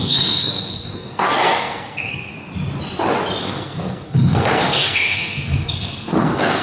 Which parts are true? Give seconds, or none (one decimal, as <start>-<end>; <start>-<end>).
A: 2.3-3.4